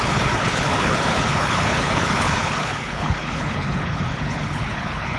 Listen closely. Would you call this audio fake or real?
fake